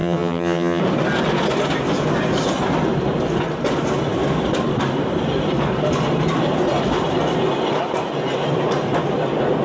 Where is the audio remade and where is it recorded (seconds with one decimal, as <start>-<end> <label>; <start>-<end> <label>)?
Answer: 0.0-0.8 remade; 0.8-9.6 recorded